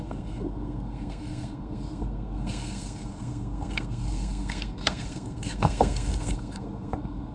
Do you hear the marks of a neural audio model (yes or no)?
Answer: yes